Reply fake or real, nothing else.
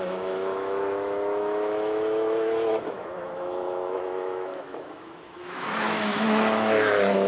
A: fake